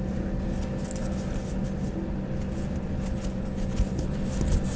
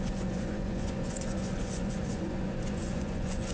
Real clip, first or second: first